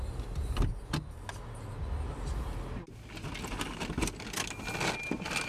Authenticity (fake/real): real